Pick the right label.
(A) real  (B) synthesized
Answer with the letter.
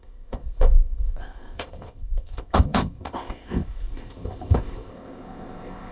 B